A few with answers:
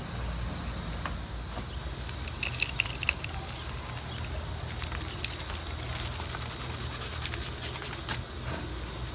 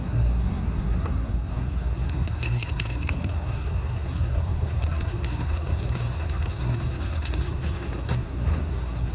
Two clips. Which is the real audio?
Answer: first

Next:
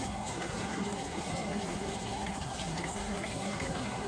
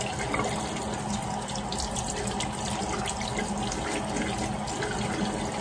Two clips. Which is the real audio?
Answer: second